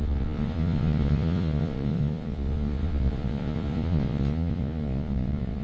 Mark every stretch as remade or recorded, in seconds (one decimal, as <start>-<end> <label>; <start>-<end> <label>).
0.0-5.6 remade